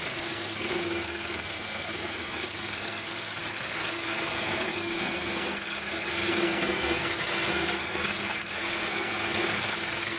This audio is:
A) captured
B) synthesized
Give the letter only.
B